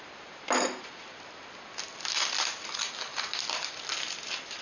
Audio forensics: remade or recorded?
recorded